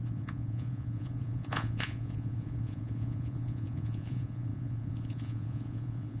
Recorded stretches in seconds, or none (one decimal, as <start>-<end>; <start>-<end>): none